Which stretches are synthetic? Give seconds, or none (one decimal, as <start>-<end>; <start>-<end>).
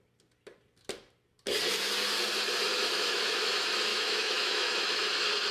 2.7-3.5; 3.9-5.1